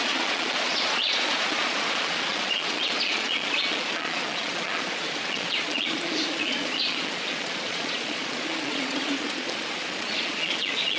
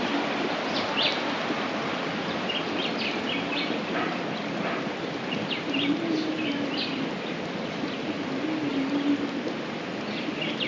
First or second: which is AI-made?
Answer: first